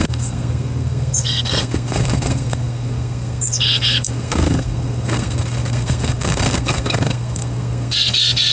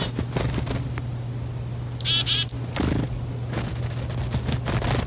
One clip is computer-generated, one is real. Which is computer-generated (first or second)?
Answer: first